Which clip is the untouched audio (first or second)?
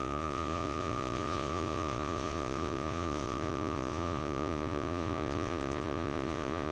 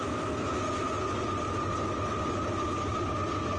second